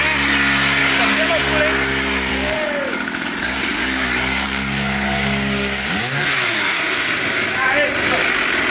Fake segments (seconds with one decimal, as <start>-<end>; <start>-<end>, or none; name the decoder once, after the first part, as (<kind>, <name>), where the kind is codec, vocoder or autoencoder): 0.8-1.4 (codec, DAC); 2.3-6.7